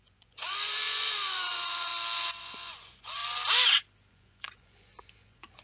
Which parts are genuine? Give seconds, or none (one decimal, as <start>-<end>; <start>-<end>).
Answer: 1.9-2.4; 3.2-4.1